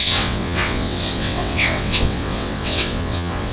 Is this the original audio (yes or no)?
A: no